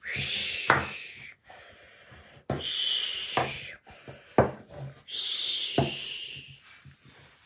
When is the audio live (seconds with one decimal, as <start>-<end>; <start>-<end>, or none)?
0.0-0.4; 1.7-7.5